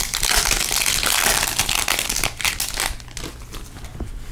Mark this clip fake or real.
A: real